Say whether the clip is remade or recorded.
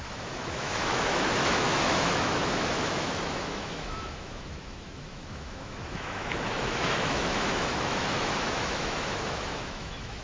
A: remade